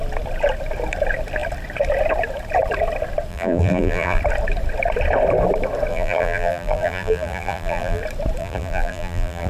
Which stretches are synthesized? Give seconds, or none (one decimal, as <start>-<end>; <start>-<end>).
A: 3.3-4.2; 5.9-8.0; 8.4-9.5